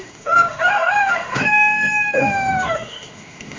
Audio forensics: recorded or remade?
remade